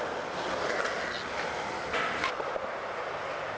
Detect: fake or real real